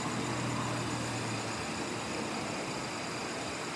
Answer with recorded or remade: remade